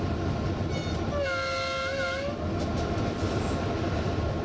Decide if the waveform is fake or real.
real